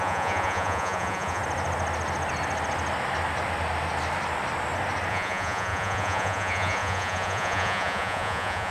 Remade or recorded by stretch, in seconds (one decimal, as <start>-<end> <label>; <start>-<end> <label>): 0.0-1.4 remade; 1.4-5.1 recorded; 5.1-8.7 remade